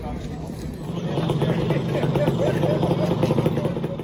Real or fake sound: real